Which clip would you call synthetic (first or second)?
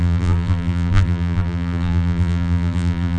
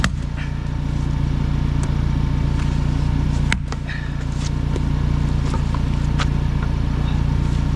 first